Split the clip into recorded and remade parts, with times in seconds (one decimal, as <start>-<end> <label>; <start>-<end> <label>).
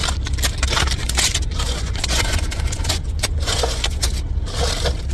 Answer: 0.0-1.0 recorded; 1.0-4.1 remade; 4.1-5.1 recorded